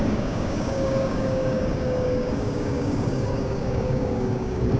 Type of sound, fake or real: fake